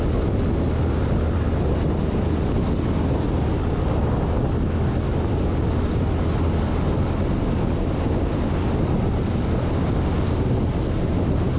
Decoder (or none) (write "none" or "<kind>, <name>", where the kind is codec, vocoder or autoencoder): none